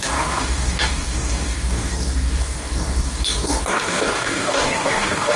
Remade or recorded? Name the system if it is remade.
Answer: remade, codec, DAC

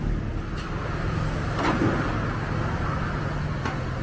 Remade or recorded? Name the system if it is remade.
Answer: recorded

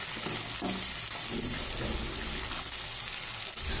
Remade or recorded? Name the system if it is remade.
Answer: recorded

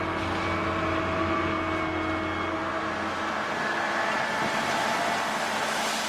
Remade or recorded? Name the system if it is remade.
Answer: recorded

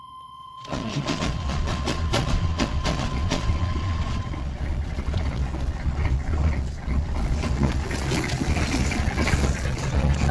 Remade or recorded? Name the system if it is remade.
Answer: remade, vocoder, Vocos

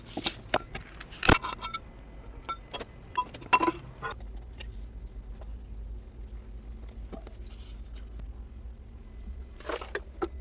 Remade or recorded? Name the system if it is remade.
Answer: recorded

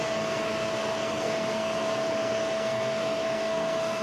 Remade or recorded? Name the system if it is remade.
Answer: remade, codec, SNAC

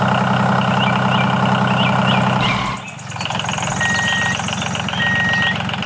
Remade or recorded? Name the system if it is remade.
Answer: recorded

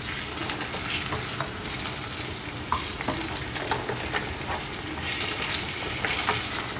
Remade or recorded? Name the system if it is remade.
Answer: recorded